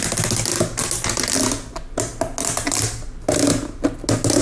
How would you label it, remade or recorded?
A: recorded